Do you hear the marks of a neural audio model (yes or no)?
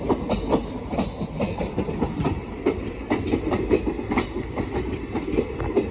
no